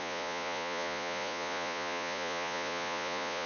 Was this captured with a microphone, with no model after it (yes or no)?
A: no